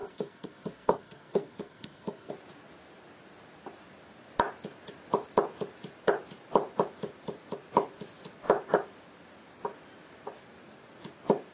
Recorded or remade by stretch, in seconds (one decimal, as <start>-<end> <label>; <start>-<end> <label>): 0.0-2.3 remade; 2.3-11.5 recorded

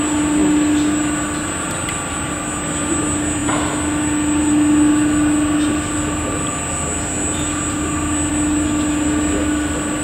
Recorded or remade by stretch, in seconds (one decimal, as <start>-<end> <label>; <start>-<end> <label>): 0.0-10.0 recorded

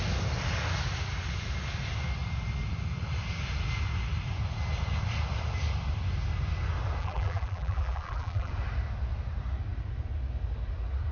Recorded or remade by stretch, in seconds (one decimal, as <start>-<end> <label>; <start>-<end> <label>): 0.0-7.0 recorded; 7.0-8.5 remade; 8.5-11.1 recorded

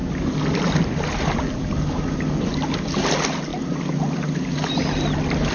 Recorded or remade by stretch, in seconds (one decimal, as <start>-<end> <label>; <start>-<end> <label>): 0.0-5.5 recorded

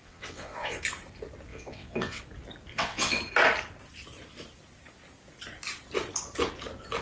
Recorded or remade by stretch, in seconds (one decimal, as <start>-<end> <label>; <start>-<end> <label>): 0.0-0.8 remade; 0.8-1.5 recorded; 1.5-2.2 remade; 2.2-2.7 recorded; 2.7-3.2 remade; 3.2-7.0 recorded

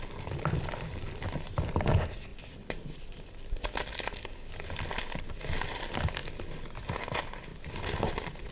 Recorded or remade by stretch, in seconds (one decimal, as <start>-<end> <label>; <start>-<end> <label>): 0.0-7.5 recorded; 7.5-8.5 remade

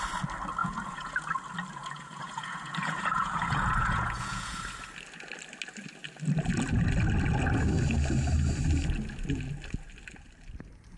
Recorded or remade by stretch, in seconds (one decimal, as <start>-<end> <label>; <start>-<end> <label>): 0.0-0.6 recorded; 0.6-1.3 remade; 1.3-1.8 recorded; 1.8-4.6 remade; 4.6-11.0 recorded

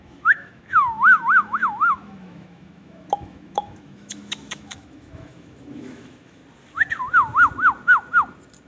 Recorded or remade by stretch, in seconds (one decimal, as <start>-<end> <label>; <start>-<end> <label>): 0.0-6.4 remade; 6.4-8.7 recorded